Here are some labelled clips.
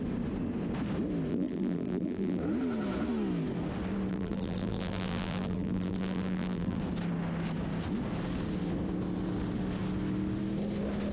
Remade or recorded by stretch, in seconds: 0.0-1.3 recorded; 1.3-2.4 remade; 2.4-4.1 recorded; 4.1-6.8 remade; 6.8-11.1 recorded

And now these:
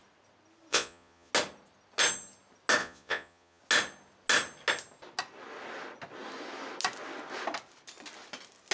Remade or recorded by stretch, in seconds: 0.0-0.7 recorded; 0.7-1.3 remade; 1.3-2.8 recorded; 2.8-3.6 remade; 3.6-8.7 recorded

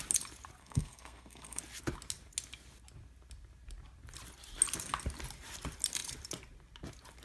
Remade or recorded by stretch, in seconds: 0.0-0.6 recorded; 0.6-1.6 remade; 1.6-7.2 recorded

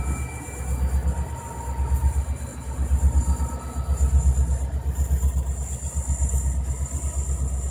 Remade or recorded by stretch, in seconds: 0.0-2.5 recorded; 2.5-7.0 remade; 7.0-7.7 recorded

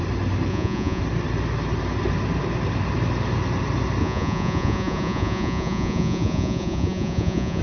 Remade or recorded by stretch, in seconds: 0.0-0.5 recorded; 0.5-1.0 remade; 1.0-4.0 recorded; 4.0-7.6 remade